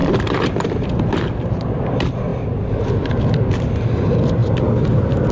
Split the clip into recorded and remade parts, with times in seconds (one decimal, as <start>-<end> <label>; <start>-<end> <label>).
0.0-2.3 recorded; 2.3-3.1 remade; 3.1-4.4 recorded; 4.4-5.3 remade